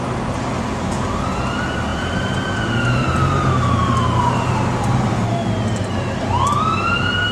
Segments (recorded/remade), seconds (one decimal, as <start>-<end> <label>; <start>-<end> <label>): 0.0-1.9 recorded; 1.9-2.5 remade; 2.5-7.3 recorded